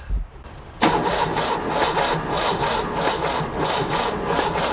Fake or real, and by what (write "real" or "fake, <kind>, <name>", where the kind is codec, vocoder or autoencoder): fake, vocoder, BigVGAN v2